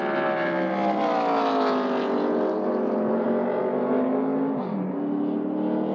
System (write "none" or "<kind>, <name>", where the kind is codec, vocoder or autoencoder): none